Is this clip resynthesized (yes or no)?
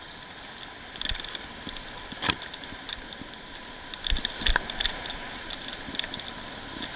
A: no